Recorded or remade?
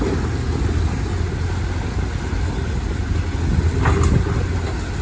recorded